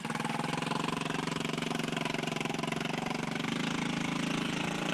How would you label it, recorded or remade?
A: recorded